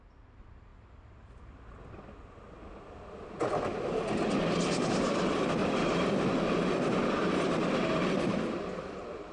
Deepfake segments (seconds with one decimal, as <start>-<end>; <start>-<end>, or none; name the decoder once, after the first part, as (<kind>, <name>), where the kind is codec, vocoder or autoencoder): none